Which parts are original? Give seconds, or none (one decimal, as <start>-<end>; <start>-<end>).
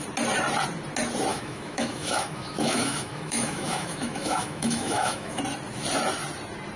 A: 0.0-1.3; 5.4-6.8